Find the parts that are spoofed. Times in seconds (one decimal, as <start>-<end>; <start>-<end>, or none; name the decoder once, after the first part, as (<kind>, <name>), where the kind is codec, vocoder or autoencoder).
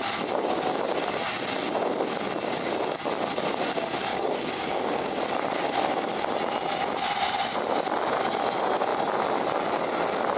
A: 4.1-5.2 (codec, DAC)